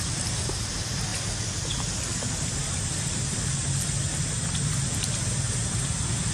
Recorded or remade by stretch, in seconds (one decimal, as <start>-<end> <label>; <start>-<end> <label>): 0.0-1.1 recorded; 1.1-1.9 remade; 1.9-2.6 recorded; 2.6-4.0 remade; 4.0-6.3 recorded